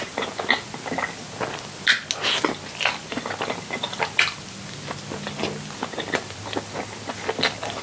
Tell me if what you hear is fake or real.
real